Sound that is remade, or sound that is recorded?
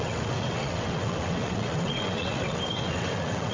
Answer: remade